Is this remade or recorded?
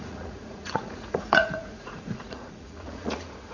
remade